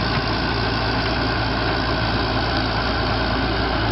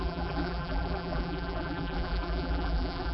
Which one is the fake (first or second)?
second